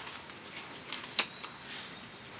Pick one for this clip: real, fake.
real